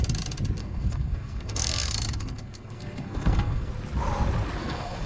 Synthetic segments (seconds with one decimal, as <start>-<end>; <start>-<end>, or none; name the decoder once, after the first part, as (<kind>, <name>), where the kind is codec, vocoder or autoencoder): 0.6-3.7 (codec, SNAC); 4.6-5.1